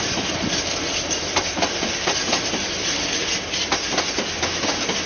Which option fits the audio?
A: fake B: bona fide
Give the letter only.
B